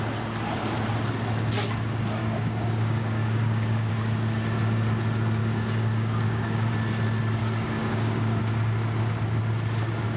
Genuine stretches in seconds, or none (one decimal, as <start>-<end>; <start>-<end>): 0.0-2.2; 3.9-5.4; 6.7-7.4; 8.4-10.2